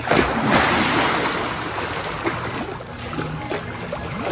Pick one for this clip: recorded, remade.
recorded